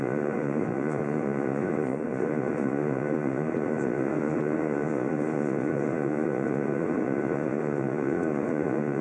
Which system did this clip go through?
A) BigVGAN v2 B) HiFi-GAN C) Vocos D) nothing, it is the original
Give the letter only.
C